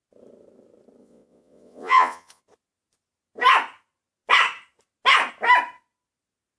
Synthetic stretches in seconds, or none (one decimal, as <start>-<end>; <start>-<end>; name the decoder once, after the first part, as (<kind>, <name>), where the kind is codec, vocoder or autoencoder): 1.0-2.4 (vocoder, Vocos)